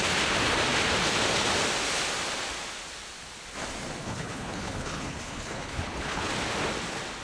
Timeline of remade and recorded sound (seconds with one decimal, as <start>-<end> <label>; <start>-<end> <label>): 0.0-4.0 recorded; 4.0-6.3 remade; 6.3-7.2 recorded